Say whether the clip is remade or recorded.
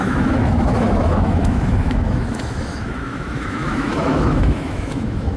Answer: remade